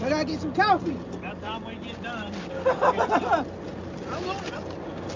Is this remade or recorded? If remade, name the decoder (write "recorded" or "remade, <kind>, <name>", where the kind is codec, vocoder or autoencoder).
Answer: recorded